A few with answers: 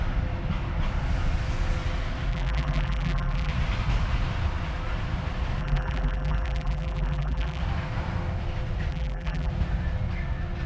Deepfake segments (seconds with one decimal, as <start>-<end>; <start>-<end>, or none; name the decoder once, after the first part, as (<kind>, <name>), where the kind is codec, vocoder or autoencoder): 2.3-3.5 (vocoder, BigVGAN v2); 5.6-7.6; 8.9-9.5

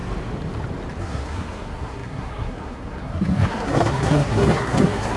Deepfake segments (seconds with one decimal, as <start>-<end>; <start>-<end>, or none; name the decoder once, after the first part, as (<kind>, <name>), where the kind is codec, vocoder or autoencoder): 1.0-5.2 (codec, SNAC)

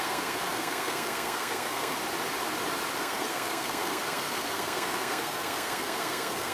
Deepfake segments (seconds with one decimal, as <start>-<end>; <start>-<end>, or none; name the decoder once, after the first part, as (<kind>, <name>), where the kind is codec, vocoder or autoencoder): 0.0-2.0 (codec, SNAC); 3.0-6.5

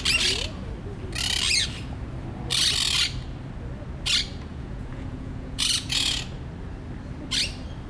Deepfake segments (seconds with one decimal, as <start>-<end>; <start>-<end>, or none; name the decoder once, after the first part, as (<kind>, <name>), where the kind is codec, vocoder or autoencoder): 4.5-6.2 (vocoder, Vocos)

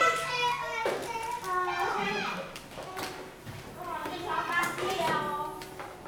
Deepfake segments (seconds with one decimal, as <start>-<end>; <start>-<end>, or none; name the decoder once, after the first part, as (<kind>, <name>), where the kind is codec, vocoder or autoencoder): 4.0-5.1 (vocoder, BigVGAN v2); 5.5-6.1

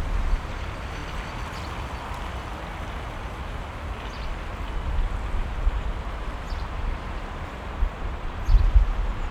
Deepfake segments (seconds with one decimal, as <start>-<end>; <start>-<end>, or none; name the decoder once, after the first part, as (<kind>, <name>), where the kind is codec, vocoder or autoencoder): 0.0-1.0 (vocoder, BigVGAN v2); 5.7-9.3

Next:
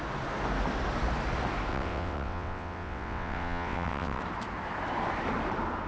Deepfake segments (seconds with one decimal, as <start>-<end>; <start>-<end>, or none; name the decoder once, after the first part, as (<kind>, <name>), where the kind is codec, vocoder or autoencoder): 1.7-4.2 (vocoder, WaveNeXt)